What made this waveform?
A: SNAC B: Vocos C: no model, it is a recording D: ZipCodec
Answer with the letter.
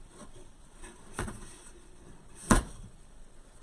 B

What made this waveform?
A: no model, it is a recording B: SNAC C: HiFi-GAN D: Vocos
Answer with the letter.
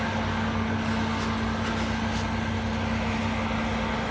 A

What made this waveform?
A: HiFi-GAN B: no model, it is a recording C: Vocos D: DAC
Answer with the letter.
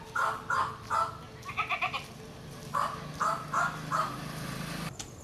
B